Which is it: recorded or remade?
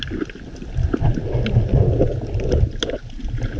recorded